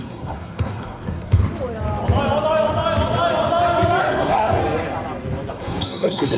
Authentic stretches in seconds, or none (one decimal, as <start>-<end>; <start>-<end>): 1.4-4.0; 4.6-5.5

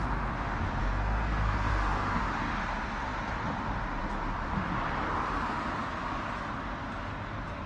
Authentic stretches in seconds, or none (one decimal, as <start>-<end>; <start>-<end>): 0.0-0.8; 2.2-7.7

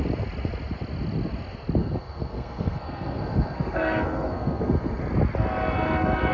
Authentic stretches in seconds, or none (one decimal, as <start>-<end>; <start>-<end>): 0.0-1.8; 5.0-6.3

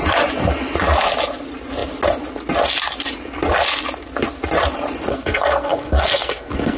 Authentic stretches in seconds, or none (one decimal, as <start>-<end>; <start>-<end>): 0.0-5.1

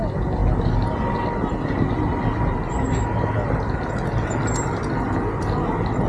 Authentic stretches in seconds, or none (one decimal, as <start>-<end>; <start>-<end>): 0.0-6.1

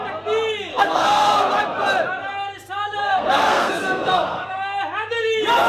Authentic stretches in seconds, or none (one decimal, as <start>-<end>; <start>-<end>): 0.0-0.7; 1.5-3.0; 4.8-5.7